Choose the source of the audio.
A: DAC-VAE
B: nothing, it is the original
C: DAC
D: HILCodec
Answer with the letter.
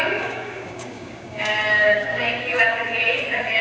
C